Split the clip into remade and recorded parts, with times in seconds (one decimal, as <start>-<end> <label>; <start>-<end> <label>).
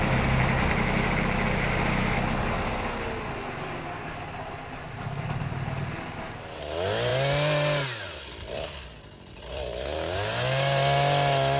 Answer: 0.0-11.6 recorded